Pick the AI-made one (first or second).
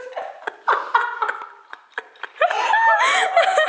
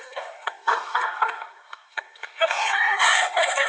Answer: second